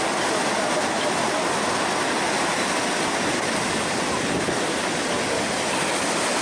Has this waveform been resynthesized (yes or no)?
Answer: no